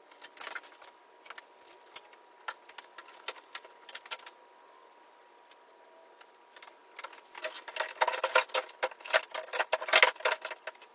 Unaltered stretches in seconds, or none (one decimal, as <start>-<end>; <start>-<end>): 0.0-10.9